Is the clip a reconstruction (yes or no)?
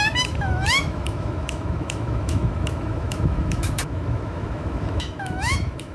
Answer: yes